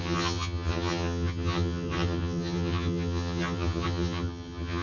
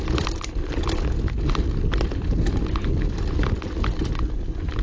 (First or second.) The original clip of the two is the second